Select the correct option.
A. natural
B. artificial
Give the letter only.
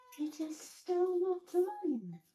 B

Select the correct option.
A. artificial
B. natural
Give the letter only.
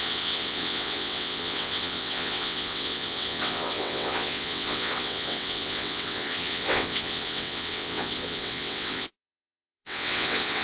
A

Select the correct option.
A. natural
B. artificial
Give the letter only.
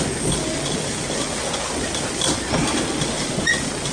A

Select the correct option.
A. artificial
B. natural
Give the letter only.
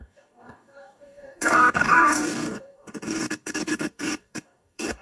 A